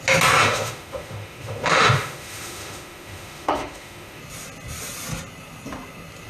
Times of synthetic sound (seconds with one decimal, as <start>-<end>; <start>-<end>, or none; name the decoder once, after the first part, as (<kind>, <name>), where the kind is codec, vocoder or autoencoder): 0.4-4.2 (autoencoder, DAC-VAE)